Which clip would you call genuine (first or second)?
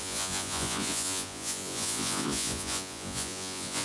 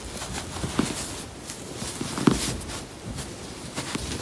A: second